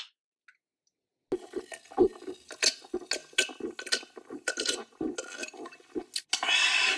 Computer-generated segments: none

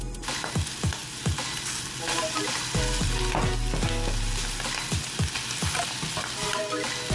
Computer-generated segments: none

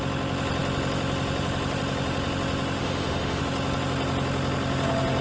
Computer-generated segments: 2.8-3.4 (autoencoder, DAC-VAE)

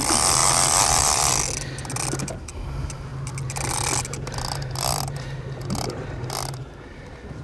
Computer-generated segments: none